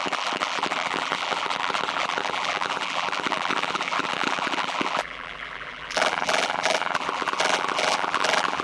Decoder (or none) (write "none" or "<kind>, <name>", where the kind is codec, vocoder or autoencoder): vocoder, BigVGAN v2